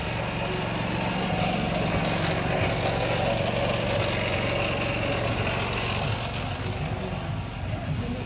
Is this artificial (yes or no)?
no